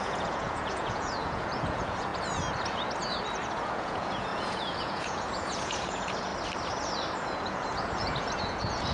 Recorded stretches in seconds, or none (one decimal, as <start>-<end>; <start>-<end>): 2.1-3.5; 6.3-7.2